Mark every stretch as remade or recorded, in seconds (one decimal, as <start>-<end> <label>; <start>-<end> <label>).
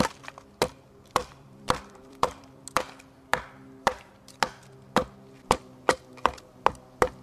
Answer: 0.0-1.2 recorded; 1.2-2.6 remade; 2.6-7.2 recorded